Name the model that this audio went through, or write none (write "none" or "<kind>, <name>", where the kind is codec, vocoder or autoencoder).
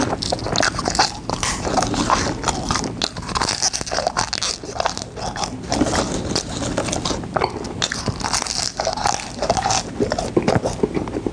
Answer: none